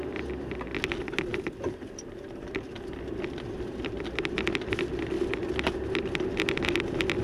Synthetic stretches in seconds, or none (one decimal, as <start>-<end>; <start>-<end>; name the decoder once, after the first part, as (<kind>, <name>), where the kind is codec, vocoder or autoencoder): 1.3-2.5 (vocoder, BigVGAN v2)